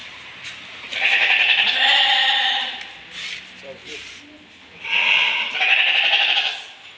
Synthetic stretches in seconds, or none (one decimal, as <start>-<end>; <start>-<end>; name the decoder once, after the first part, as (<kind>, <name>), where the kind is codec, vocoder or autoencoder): none